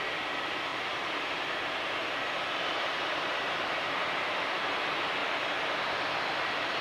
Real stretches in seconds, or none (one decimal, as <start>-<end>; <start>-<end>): 0.0-0.7; 4.8-5.2; 5.8-6.8